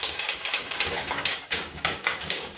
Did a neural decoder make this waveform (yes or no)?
yes